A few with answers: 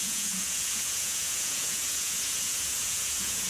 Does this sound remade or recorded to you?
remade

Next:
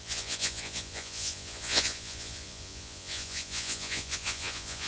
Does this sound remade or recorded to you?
remade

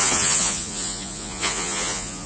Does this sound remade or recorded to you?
remade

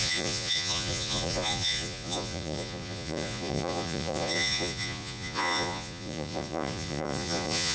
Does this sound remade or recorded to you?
remade